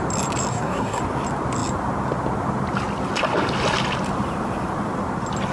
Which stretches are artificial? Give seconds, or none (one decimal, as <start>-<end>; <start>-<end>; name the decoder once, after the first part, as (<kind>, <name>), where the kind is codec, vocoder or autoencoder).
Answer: 0.5-1.0 (codec, SNAC)